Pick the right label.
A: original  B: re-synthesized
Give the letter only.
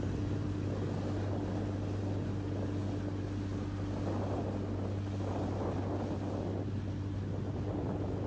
A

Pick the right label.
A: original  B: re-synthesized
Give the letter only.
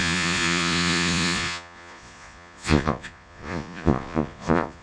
B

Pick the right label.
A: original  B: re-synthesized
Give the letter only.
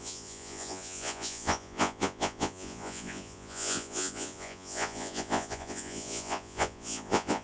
B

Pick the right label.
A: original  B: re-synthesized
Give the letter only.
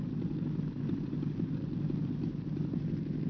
A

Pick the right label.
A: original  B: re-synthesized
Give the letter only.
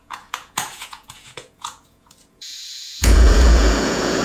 B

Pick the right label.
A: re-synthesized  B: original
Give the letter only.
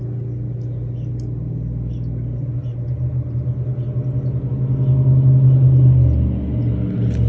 B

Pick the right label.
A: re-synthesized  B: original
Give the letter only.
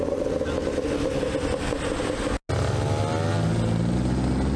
B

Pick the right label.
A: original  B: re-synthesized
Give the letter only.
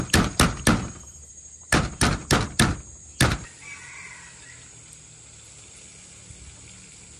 A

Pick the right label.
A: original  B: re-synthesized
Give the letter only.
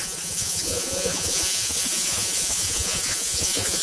B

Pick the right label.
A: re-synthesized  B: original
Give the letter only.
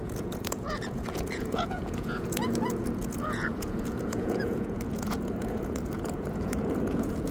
A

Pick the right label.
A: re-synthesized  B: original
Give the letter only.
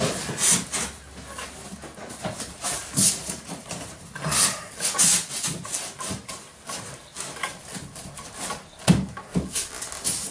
B